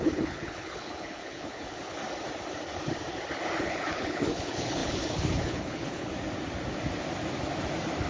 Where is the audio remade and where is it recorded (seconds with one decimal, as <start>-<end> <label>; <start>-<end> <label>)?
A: 0.0-2.0 remade; 2.0-3.6 recorded; 3.6-6.1 remade; 6.1-8.1 recorded

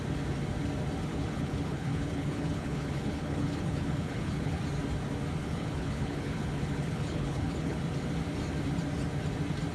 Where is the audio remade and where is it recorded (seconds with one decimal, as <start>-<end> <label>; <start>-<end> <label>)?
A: 0.0-1.1 recorded; 1.1-4.6 remade; 4.6-5.4 recorded; 5.4-7.8 remade; 7.8-9.7 recorded